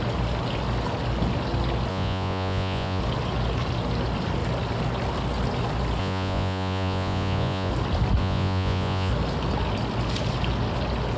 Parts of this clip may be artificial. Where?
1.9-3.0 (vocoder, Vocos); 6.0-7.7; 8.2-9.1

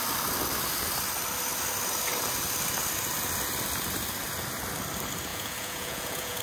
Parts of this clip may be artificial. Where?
5.3-6.4 (vocoder, Vocos)

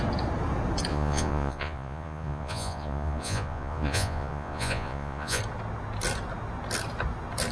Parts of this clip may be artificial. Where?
0.9-5.4 (vocoder, Vocos)

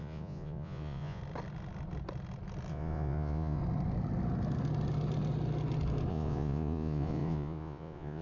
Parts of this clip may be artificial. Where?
0.0-1.2 (vocoder, Vocos); 2.7-3.6; 6.1-8.2